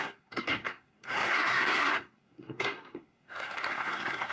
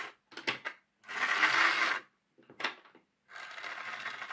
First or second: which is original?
second